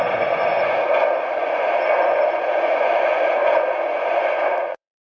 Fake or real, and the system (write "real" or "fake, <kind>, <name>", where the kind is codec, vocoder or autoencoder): fake, vocoder, Vocos